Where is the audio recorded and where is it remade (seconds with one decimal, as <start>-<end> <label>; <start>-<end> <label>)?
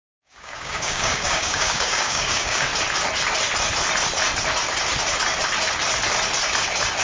0.0-2.7 remade; 2.7-7.0 recorded